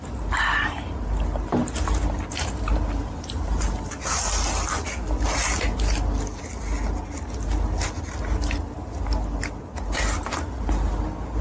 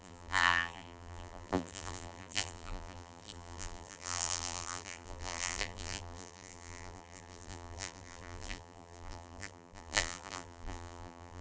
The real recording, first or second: first